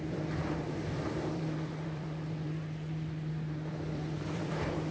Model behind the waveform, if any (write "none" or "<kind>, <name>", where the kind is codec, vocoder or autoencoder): vocoder, BigVGAN v2